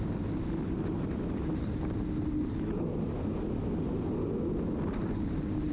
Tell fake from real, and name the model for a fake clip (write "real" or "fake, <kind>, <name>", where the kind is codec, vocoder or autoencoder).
real